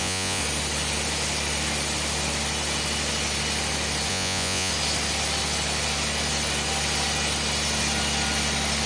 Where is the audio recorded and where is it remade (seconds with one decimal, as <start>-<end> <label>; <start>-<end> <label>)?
0.0-0.4 remade; 0.4-4.1 recorded; 4.1-4.7 remade; 4.7-8.9 recorded